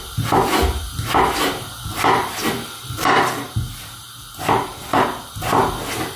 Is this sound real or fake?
real